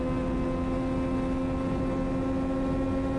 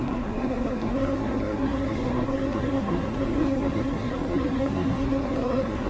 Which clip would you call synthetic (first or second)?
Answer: second